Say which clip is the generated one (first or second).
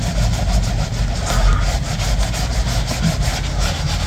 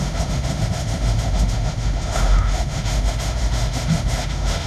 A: second